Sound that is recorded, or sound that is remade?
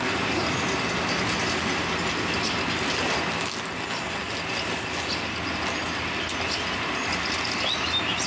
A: recorded